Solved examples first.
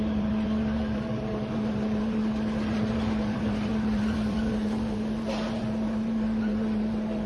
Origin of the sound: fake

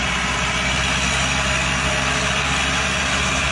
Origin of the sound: real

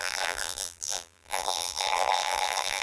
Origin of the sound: fake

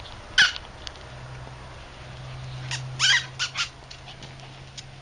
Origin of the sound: real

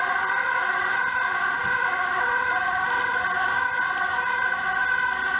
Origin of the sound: real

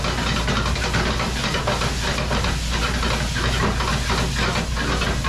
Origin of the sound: real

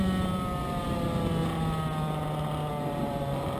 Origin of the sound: real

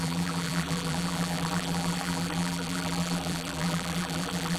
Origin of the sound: fake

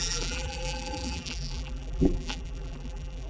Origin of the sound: fake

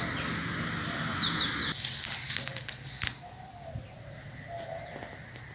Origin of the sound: real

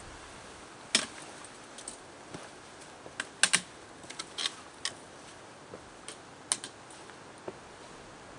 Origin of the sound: real